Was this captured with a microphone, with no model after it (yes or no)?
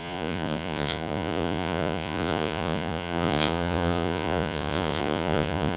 no